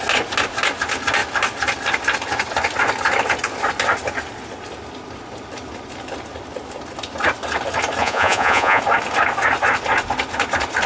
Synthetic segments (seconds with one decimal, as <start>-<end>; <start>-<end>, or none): 8.0-8.8